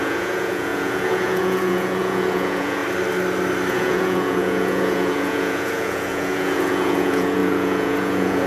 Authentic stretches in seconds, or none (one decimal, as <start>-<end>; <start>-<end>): 2.8-3.7